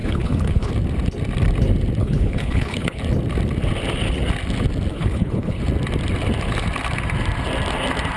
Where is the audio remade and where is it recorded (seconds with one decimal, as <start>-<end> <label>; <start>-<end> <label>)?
0.0-0.7 remade; 0.7-2.0 recorded; 2.0-3.0 remade; 3.0-4.9 recorded; 4.9-5.6 remade; 5.6-8.2 recorded